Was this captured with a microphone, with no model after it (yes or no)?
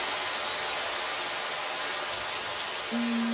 yes